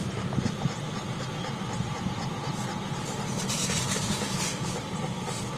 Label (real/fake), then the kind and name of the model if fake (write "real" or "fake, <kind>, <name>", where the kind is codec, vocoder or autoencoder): real